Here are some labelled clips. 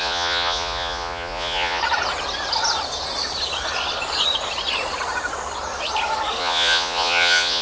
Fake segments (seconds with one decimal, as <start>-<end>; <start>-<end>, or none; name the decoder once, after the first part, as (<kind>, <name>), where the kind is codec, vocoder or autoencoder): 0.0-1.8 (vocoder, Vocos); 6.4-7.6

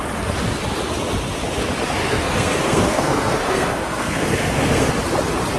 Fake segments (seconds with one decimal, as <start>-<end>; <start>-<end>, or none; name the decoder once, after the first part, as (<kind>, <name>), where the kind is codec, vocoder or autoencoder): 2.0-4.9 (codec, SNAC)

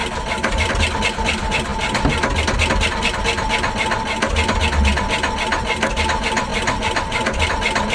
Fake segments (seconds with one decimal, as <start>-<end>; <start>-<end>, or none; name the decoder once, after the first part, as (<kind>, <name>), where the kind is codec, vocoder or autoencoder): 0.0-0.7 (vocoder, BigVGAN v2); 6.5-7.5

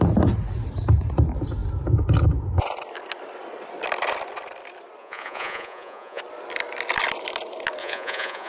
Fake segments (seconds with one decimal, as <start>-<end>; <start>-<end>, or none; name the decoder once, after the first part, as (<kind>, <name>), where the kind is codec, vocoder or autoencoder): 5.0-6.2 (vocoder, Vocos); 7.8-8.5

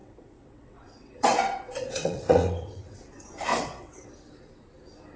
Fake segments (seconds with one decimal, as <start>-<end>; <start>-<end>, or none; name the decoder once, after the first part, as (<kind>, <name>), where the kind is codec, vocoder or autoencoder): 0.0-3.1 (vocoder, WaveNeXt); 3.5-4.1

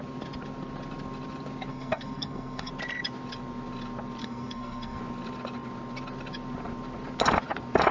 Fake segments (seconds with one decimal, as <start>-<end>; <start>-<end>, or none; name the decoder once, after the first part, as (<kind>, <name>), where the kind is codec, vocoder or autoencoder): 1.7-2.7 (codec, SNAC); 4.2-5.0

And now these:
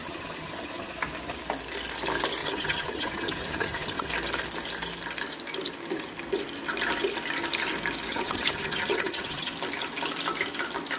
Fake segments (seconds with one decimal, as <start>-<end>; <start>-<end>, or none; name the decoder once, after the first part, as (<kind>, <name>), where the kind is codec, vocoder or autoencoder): 0.0-0.9 (vocoder, HiFi-GAN); 2.4-4.1; 8.1-9.5

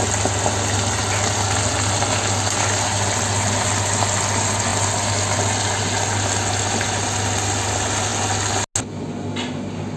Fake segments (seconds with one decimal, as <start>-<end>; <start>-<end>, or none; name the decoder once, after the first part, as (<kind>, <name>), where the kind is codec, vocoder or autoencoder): none